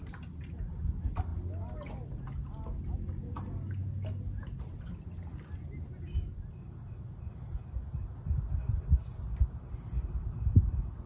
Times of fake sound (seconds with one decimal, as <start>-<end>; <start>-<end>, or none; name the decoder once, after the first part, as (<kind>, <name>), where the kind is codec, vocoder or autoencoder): none